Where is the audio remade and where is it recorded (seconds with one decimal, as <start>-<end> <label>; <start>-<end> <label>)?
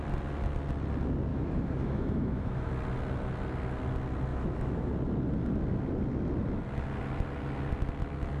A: 0.0-1.3 recorded; 1.3-2.7 remade; 2.7-4.3 recorded; 4.3-4.9 remade; 4.9-8.4 recorded